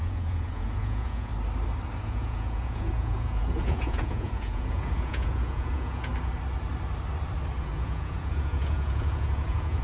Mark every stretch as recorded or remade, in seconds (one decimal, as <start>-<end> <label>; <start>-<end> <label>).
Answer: 0.0-1.3 remade; 1.3-2.0 recorded; 2.0-6.1 remade; 6.1-7.6 recorded; 7.6-9.8 remade